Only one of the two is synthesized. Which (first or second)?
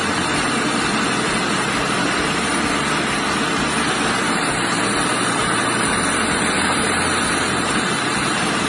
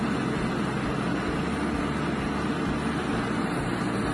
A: first